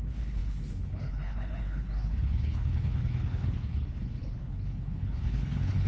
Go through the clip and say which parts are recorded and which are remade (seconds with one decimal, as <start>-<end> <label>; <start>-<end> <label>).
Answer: 0.0-5.9 remade